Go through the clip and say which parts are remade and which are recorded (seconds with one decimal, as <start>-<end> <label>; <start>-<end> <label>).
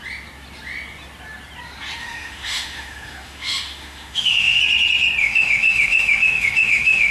0.0-2.0 recorded; 2.0-4.6 remade; 4.6-5.2 recorded; 5.2-7.1 remade